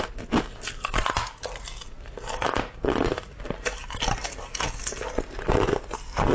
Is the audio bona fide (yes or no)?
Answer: yes